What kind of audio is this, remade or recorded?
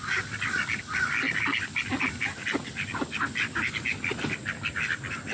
recorded